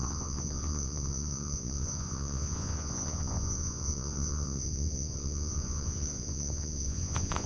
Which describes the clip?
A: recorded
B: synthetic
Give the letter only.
B